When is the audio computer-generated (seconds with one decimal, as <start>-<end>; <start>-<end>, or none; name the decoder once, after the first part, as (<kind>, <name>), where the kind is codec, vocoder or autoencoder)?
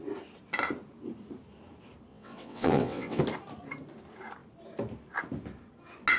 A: 2.1-3.2 (vocoder, WaveNeXt)